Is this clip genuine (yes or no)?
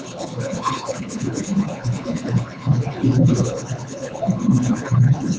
no